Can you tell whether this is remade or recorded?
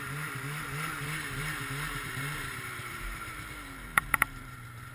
remade